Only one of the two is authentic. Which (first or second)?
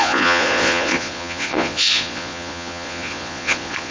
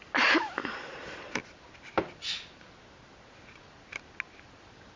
second